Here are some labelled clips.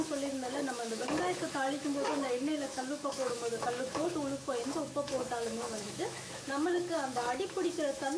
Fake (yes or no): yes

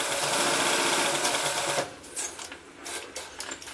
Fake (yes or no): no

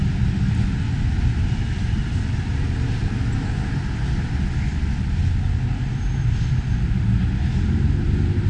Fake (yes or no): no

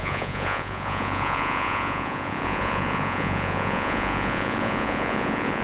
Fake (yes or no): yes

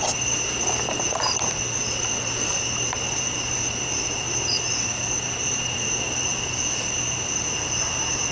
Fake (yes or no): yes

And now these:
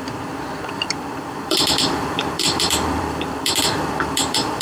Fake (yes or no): yes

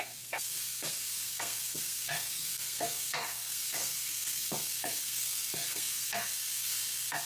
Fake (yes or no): yes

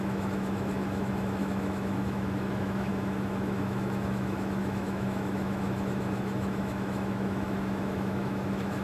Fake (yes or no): yes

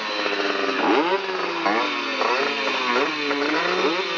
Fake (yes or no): no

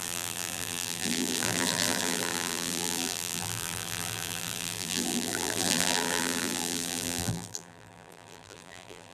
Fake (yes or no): yes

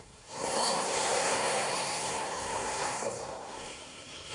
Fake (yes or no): yes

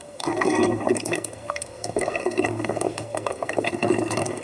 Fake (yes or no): yes